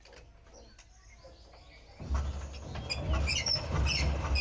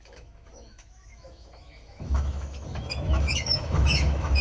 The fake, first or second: second